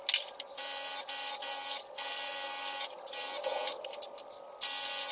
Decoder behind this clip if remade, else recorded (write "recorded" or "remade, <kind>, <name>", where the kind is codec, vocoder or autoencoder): recorded